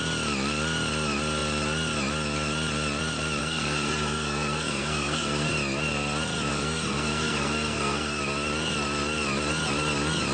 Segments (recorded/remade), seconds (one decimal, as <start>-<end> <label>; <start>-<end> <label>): 0.0-3.4 recorded; 3.4-5.5 remade; 5.5-6.5 recorded; 6.5-8.2 remade; 8.2-10.3 recorded